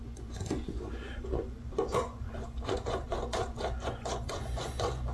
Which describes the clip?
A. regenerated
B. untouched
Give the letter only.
A